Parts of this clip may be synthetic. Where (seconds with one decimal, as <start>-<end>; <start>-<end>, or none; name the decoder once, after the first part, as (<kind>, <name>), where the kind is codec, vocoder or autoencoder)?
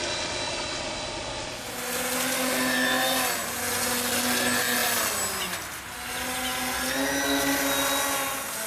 none